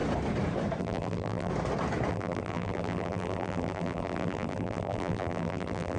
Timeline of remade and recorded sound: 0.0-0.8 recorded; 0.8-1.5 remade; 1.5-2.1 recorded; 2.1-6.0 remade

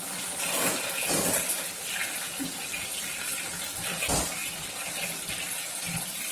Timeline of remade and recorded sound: 0.0-6.3 recorded

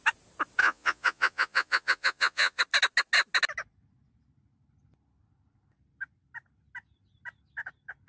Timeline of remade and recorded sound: 0.0-0.6 recorded; 0.6-2.6 remade; 2.6-8.1 recorded

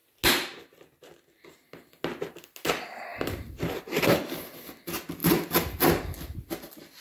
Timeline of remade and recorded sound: 0.0-3.1 recorded; 3.1-4.2 remade; 4.2-5.2 recorded; 5.2-5.8 remade; 5.8-7.0 recorded

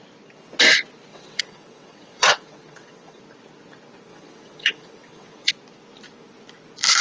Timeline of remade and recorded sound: 0.0-1.1 recorded; 1.1-3.2 remade; 3.2-4.1 recorded; 4.1-5.5 remade; 5.5-7.0 recorded

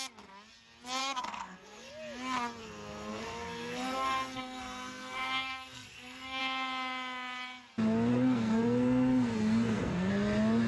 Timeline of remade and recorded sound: 0.0-1.0 recorded; 1.0-1.9 remade; 1.9-2.6 recorded; 2.6-6.4 remade; 6.4-8.1 recorded; 8.1-10.1 remade; 10.1-10.7 recorded